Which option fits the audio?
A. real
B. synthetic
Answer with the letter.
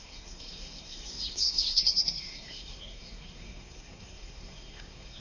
B